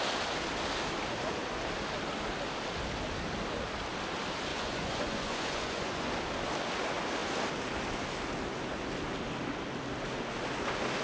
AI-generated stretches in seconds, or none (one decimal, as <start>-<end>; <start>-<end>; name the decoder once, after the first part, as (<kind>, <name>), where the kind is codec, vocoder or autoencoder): 4.5-6.1 (vocoder, Vocos)